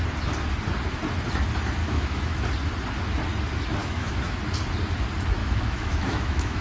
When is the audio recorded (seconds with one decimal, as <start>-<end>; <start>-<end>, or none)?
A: 0.0-1.8; 2.4-3.8; 4.4-5.4